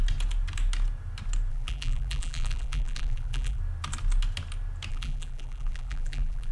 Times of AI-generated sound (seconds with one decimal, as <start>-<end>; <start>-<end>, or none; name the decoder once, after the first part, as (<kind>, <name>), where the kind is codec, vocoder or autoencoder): 1.5-3.6 (vocoder, BigVGAN v2); 4.9-6.5